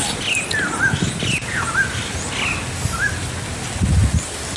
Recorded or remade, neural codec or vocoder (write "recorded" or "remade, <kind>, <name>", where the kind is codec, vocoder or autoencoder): recorded